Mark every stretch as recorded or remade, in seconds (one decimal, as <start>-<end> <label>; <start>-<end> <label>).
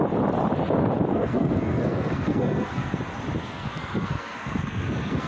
0.0-1.1 recorded; 1.1-3.0 remade; 3.0-3.4 recorded; 3.4-5.3 remade